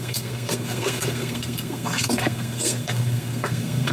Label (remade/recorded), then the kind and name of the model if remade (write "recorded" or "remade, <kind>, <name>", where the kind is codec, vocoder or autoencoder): remade, codec, SNAC